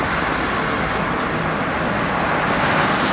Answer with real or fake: real